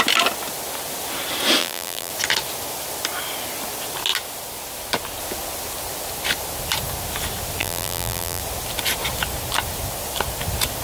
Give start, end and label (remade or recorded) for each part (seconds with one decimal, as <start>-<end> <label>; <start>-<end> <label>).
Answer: 0.0-1.6 recorded; 1.6-2.1 remade; 2.1-7.6 recorded; 7.6-8.4 remade; 8.4-10.8 recorded